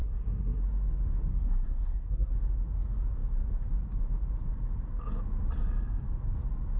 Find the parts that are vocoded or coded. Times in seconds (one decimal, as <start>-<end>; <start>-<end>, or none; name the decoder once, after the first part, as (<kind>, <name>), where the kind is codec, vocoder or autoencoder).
0.0-0.6 (codec, SNAC); 1.3-2.3